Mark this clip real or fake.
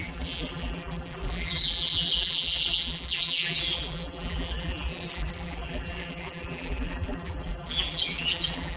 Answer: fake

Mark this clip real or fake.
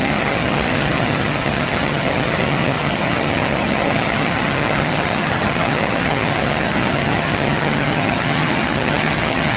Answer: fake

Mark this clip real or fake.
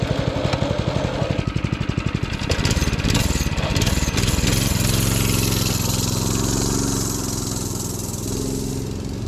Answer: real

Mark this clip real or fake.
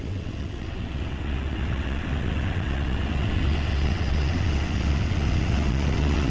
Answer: fake